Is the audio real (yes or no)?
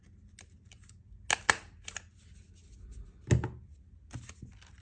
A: yes